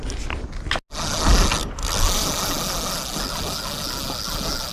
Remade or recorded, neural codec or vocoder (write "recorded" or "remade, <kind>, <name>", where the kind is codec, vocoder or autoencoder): recorded